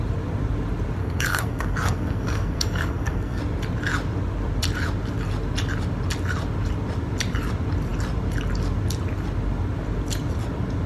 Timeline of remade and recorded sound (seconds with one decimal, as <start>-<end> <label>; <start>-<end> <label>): 0.0-1.0 recorded; 1.0-3.4 remade; 3.4-10.9 recorded